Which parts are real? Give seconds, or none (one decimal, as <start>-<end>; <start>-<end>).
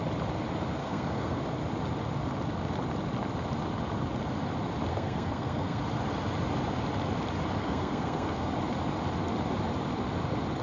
0.0-0.8; 1.4-4.9; 5.8-7.6; 8.5-10.6